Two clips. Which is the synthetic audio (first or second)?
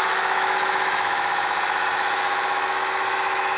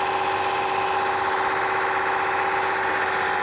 first